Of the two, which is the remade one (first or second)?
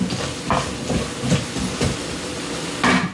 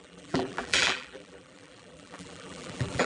second